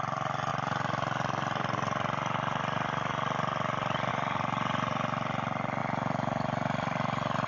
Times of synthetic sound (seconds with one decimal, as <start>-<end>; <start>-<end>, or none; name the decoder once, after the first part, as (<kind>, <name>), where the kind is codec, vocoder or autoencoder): 0.5-4.1 (vocoder, BigVGAN v2); 5.8-7.5